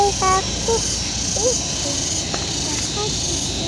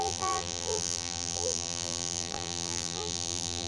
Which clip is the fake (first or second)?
second